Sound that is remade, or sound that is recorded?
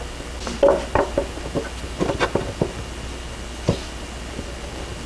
recorded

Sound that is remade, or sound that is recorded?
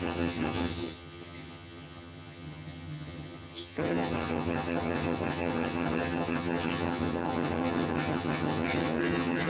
remade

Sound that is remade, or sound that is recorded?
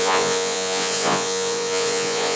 remade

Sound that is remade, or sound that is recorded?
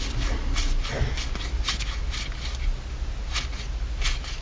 recorded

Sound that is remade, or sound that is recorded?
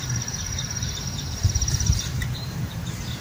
remade